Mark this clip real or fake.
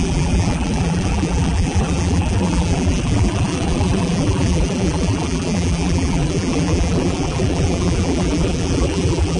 fake